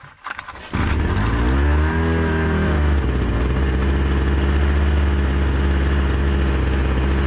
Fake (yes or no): no